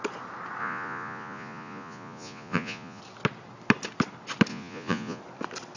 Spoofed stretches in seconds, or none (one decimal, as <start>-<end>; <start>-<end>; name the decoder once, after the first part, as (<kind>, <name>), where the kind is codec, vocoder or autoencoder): 0.6-3.0 (vocoder, Vocos); 4.5-5.2